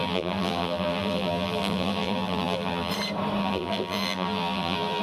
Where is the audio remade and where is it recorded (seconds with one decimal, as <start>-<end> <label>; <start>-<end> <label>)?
0.0-2.9 remade; 2.9-3.4 recorded; 3.4-5.0 remade